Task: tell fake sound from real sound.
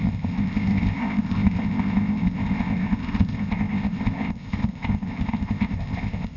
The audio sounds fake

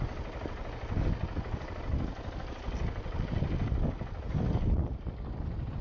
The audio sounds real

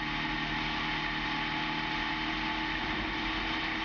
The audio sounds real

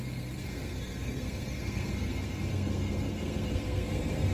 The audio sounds fake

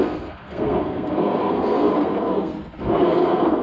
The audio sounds fake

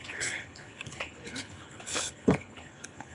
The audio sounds fake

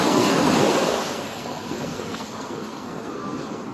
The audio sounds fake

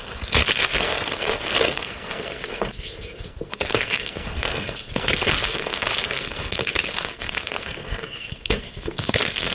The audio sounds fake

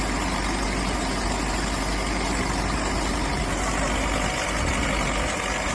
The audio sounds real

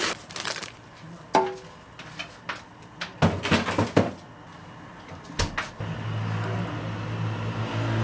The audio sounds real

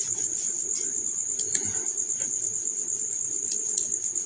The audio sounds real